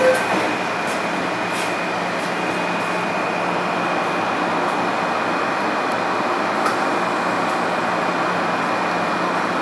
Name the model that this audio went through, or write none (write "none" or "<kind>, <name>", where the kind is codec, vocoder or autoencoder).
none